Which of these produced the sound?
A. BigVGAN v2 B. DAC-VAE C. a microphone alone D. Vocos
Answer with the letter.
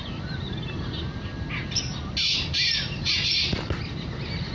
C